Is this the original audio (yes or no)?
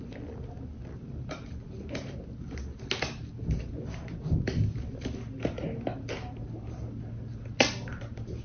yes